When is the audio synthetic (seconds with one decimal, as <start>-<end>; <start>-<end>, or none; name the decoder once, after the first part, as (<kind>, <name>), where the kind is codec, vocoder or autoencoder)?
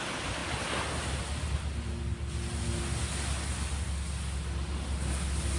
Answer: none